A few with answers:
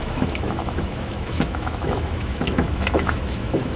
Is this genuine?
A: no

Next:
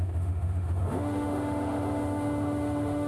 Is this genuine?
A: no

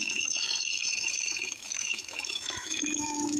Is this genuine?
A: no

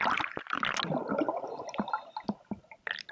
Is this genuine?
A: yes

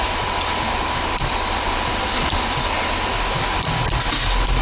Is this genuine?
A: yes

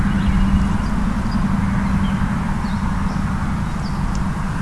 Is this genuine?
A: yes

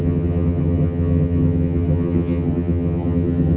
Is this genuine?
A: no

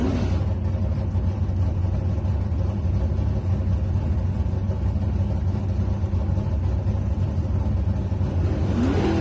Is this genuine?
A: yes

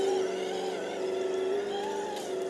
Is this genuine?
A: yes